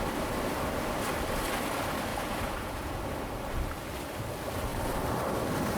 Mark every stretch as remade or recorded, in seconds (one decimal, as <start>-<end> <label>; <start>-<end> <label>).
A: 0.0-2.1 recorded; 2.1-3.0 remade; 3.0-5.8 recorded